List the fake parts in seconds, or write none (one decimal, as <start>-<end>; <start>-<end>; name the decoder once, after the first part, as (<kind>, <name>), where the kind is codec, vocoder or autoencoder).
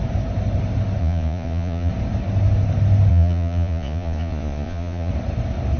1.0-1.9 (vocoder, Vocos); 3.1-5.1